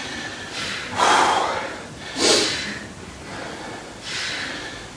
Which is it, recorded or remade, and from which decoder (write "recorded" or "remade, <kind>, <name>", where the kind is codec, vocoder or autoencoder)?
recorded